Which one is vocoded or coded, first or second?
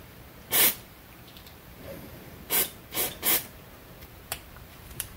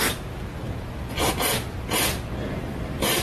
first